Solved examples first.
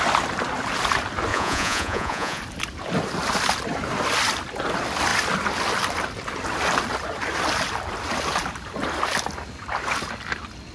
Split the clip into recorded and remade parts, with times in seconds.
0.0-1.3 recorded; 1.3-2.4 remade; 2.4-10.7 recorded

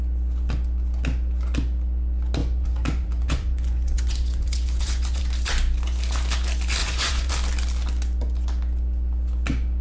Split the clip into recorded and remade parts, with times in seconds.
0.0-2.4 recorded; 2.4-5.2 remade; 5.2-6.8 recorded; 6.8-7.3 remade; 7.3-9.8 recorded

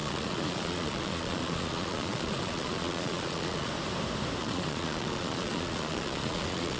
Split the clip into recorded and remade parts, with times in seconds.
0.0-3.7 remade; 3.7-4.4 recorded; 4.4-6.8 remade

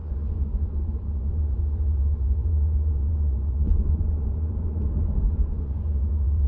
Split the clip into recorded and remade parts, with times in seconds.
0.0-6.5 remade

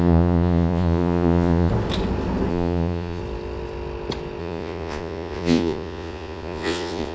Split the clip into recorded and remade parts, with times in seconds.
0.0-1.7 remade; 1.7-2.5 recorded; 2.5-3.2 remade; 3.2-4.4 recorded; 4.4-7.1 remade